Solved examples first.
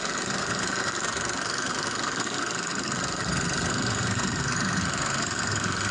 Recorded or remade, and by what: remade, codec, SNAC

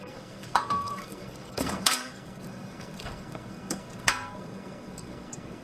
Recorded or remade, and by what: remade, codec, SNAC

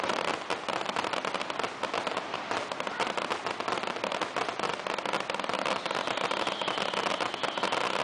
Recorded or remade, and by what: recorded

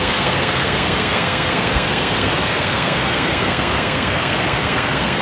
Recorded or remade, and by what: remade, codec, SNAC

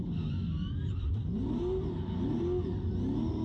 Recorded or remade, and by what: recorded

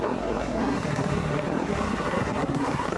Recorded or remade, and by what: remade, codec, SNAC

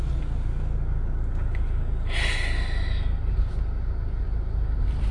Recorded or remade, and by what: recorded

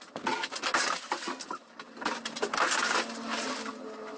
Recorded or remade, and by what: recorded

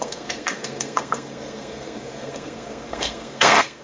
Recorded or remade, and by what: remade, codec, SNAC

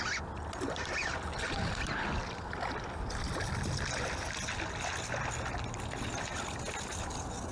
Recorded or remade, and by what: recorded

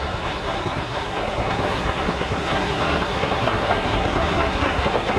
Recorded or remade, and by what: remade, codec, SNAC